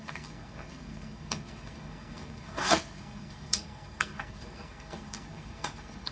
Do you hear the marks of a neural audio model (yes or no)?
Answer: yes